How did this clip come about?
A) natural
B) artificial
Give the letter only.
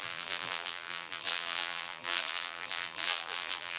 B